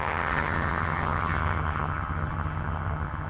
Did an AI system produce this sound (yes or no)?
yes